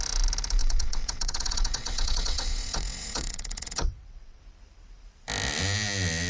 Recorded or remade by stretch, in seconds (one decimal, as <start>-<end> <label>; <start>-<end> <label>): 0.0-0.6 recorded; 0.6-4.4 remade; 4.4-6.3 recorded